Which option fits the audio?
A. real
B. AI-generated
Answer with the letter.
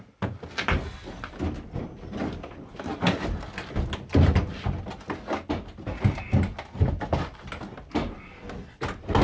A